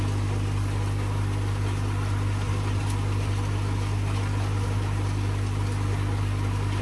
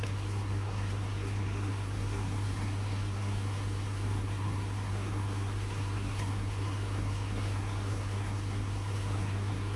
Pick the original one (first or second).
first